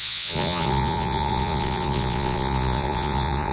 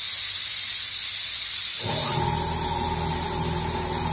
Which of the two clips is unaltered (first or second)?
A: second